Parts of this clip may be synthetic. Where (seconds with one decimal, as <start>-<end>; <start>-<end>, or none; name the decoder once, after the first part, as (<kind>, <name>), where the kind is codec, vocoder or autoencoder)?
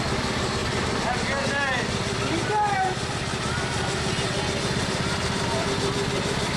none